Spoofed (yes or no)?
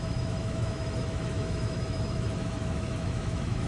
yes